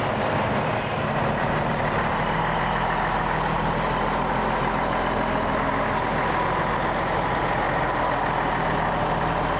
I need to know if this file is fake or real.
real